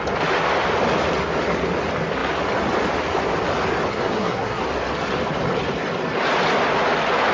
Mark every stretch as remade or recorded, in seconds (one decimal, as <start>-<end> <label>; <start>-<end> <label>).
0.0-3.9 recorded; 3.9-4.6 remade; 4.6-7.3 recorded

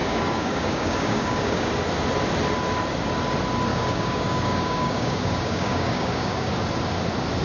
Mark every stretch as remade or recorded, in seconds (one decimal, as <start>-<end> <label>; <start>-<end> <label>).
0.0-1.7 remade; 1.7-3.7 recorded; 3.7-6.5 remade; 6.5-7.4 recorded

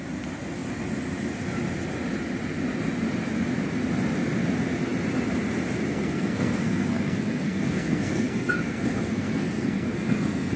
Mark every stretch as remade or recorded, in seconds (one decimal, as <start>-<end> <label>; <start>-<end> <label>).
0.0-5.9 recorded; 5.9-10.6 remade

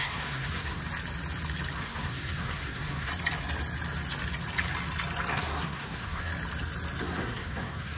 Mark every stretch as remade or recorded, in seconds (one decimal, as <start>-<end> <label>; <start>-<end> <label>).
0.0-0.8 remade; 0.8-1.8 recorded; 1.8-3.1 remade; 3.1-5.3 recorded; 5.3-6.3 remade; 6.3-7.0 recorded; 7.0-8.0 remade

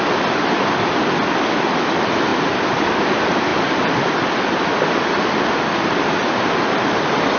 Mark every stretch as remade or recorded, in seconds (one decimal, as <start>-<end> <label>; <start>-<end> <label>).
0.0-7.4 recorded

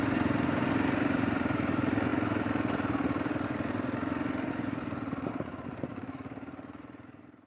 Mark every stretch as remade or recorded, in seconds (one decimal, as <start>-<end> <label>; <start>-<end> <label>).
0.0-2.1 remade; 2.1-4.5 recorded; 4.5-7.5 remade

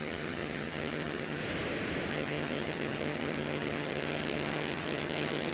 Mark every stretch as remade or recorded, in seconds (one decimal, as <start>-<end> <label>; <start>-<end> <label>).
0.0-1.4 remade; 1.4-2.1 recorded; 2.1-5.5 remade

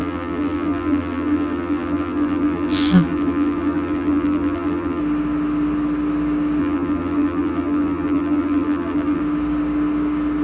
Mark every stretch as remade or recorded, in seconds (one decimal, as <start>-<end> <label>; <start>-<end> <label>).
0.0-5.0 remade; 5.0-6.6 recorded; 6.6-9.2 remade; 9.2-10.4 recorded